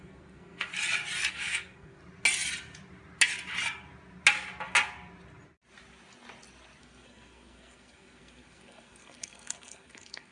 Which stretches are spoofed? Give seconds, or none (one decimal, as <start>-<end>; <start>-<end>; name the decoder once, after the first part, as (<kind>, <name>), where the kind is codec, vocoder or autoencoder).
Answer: 0.0-0.7 (codec, SNAC); 1.3-2.0; 6.8-10.3